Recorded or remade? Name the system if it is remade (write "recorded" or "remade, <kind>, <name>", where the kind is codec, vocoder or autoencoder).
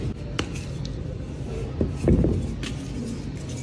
recorded